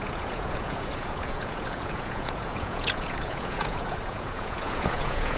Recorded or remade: remade